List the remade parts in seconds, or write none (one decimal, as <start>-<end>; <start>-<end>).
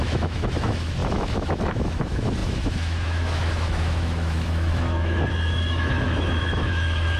0.0-7.2